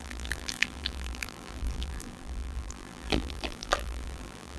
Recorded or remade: remade